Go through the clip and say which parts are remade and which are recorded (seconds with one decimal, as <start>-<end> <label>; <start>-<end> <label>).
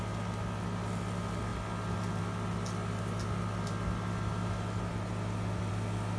0.0-6.2 recorded